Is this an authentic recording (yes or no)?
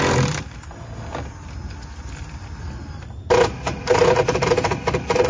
yes